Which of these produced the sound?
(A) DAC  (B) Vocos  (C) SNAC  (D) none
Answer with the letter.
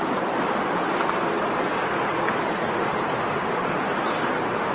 D